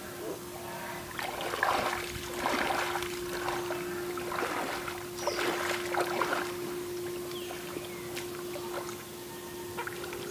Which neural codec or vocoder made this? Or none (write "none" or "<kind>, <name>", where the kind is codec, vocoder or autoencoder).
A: none